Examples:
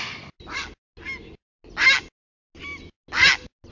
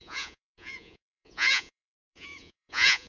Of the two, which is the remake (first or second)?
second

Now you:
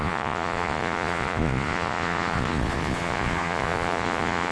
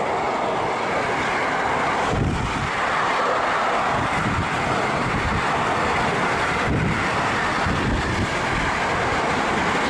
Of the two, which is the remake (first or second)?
first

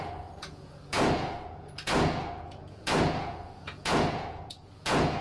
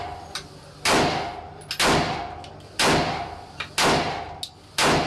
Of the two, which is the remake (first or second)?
first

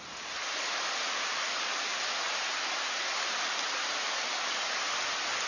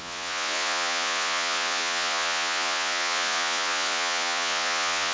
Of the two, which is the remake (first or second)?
second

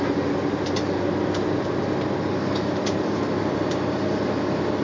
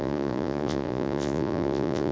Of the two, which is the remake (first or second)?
second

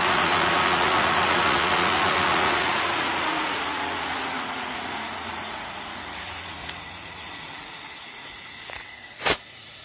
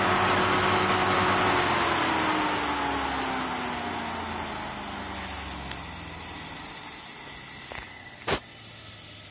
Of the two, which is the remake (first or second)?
first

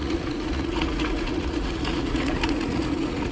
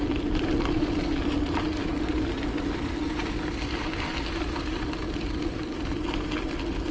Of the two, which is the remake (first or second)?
first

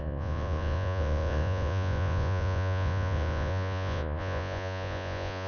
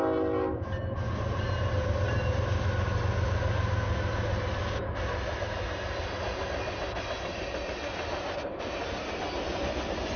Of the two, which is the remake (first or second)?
first